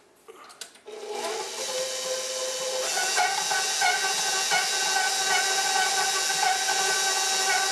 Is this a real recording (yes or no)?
yes